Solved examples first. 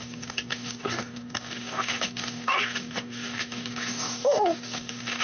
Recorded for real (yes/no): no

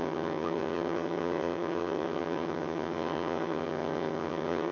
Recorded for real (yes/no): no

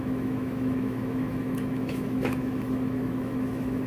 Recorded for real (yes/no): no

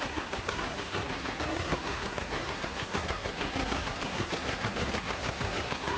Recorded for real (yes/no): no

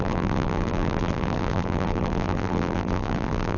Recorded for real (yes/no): no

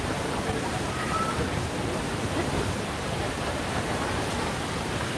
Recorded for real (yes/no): no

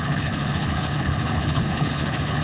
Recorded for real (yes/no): no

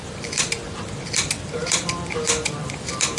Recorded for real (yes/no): no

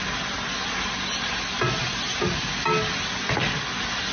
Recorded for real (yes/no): yes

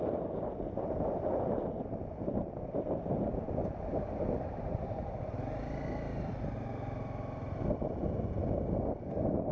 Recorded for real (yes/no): yes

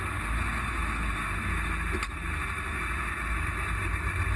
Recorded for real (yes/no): yes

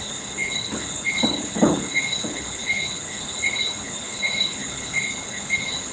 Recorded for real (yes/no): no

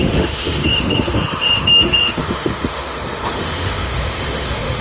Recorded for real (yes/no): no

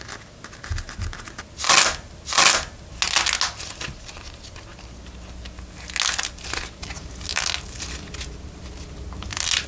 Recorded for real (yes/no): yes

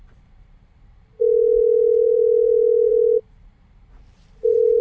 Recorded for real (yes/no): no